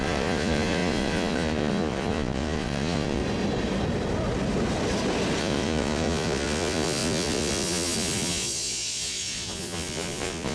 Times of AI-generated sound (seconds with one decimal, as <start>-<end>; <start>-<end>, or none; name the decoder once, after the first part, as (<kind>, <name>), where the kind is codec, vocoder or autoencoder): 0.0-3.2 (vocoder, Vocos); 5.4-10.5